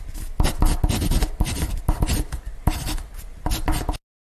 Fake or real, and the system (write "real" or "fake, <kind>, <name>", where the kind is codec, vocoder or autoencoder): real